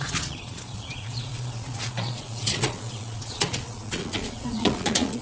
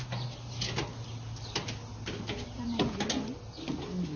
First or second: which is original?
second